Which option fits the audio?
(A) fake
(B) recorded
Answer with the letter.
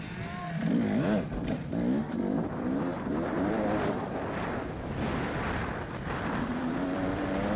A